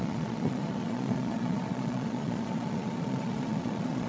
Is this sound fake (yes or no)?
yes